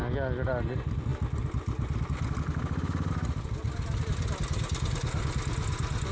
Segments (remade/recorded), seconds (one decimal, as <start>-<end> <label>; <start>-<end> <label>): 0.0-6.1 recorded